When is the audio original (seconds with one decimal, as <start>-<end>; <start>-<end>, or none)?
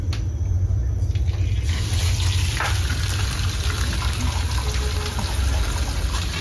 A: 0.0-6.4